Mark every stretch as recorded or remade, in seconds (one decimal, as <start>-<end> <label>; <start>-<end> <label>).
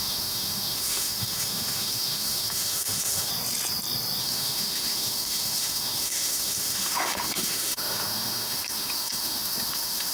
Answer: 0.0-3.3 remade; 3.3-4.2 recorded; 4.2-10.1 remade